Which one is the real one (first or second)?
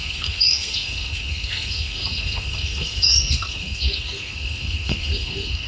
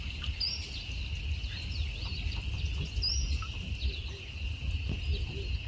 second